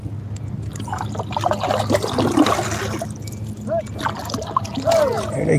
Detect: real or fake real